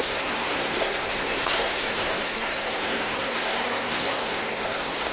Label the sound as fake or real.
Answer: fake